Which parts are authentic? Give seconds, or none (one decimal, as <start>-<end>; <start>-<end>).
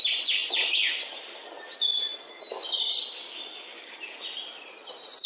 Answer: 2.1-2.8